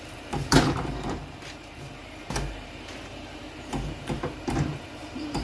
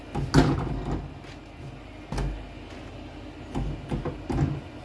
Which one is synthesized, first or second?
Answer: first